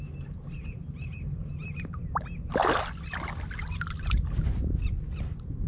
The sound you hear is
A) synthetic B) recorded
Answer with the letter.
B